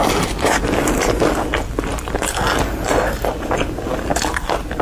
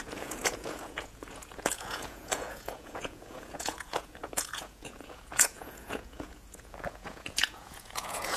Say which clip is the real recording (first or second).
first